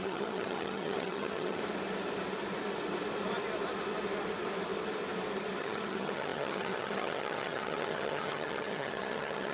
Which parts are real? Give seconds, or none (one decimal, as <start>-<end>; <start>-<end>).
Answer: 1.6-5.6